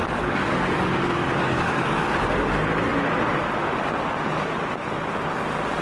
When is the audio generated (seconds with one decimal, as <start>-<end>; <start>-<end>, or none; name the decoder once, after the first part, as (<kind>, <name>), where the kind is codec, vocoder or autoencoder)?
0.0-2.5 (codec, DAC)